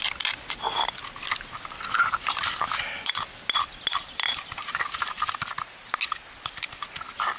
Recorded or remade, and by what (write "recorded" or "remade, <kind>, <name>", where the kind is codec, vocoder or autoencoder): recorded